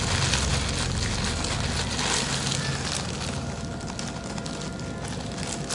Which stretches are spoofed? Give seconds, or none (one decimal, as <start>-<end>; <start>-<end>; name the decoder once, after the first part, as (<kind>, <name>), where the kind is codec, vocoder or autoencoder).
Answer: none